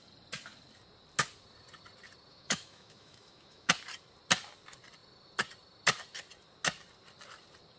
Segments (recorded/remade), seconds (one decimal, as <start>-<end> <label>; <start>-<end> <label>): 0.0-2.3 recorded; 2.3-3.7 remade; 3.7-7.8 recorded